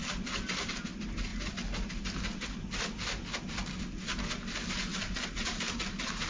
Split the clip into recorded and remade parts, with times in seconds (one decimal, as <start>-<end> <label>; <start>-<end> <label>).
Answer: 0.0-4.9 recorded; 4.9-6.3 remade